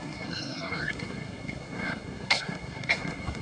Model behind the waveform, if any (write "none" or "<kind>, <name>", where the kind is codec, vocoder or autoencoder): codec, SNAC